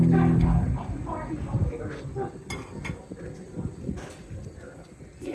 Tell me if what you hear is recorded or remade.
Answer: recorded